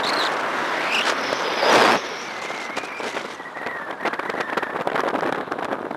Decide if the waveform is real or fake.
real